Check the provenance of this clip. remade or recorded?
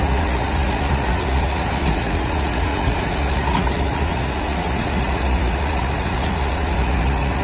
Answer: remade